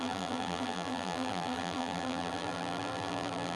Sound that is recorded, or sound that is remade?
remade